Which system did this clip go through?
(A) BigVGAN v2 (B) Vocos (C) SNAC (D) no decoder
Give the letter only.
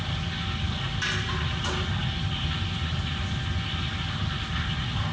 D